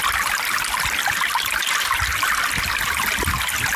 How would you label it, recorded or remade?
recorded